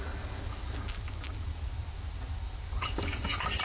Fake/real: real